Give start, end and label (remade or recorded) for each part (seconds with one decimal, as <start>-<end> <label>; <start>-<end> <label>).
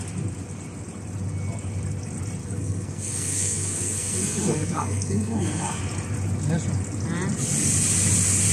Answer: 0.0-2.4 recorded; 2.4-5.8 remade; 5.8-8.5 recorded